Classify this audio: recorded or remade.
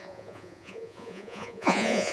remade